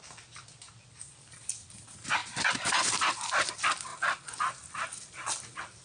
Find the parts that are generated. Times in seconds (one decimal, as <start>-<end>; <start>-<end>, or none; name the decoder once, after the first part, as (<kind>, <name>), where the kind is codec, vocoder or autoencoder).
none